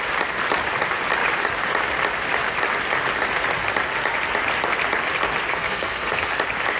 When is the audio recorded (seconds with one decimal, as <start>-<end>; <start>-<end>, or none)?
0.0-5.5; 6.3-6.8